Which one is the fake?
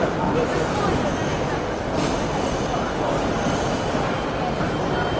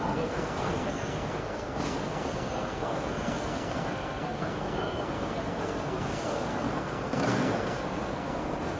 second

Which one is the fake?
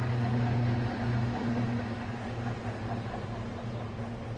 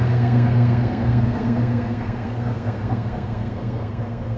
second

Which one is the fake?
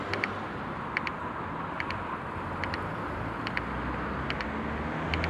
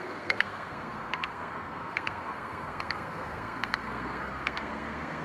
second